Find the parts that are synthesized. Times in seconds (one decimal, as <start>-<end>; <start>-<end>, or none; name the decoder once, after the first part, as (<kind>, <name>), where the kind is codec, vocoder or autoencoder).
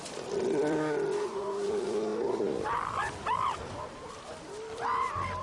0.0-5.4 (vocoder, BigVGAN v2)